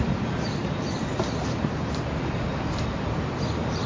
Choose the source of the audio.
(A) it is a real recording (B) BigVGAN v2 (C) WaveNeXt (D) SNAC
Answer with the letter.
B